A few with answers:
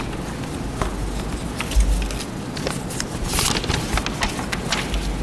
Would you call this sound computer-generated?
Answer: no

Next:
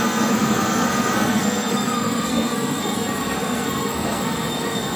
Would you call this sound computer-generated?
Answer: yes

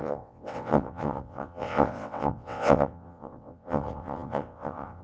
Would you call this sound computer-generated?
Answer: yes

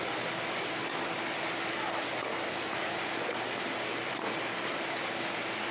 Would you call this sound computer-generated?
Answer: no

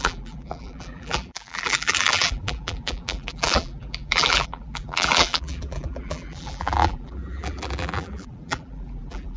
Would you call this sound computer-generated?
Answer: yes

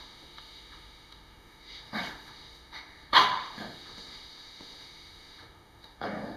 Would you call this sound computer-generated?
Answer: yes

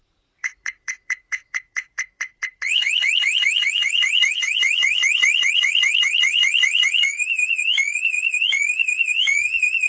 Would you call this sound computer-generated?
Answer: yes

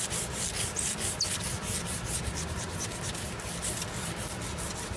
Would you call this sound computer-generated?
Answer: no